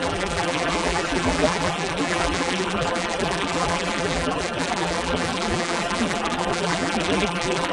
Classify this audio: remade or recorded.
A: remade